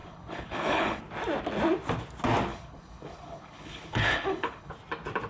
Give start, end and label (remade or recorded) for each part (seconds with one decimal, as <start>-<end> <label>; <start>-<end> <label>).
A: 0.0-1.0 remade; 1.0-2.5 recorded; 2.5-4.7 remade; 4.7-5.3 recorded